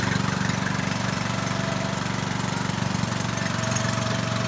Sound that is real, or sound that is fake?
real